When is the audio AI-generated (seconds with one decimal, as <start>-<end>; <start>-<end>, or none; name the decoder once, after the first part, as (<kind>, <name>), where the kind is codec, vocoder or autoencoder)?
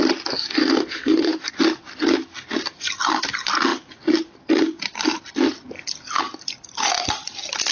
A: 0.6-1.4 (codec, SNAC)